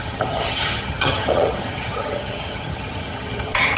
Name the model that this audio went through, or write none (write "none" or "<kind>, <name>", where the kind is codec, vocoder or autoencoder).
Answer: vocoder, HiFi-GAN